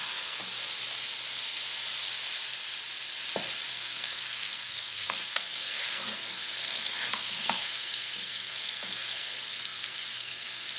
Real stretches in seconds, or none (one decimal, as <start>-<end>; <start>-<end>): 0.4-3.7